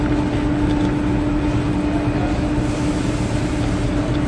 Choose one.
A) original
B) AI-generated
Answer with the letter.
A